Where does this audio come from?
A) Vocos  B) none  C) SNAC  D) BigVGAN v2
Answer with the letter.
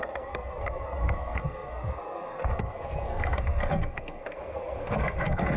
C